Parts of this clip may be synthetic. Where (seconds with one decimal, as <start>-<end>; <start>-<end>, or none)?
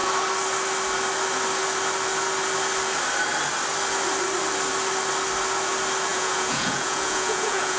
6.1-7.8